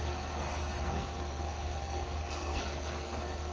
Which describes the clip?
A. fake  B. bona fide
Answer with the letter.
A